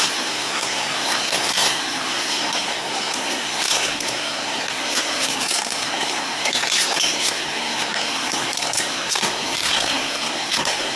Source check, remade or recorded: remade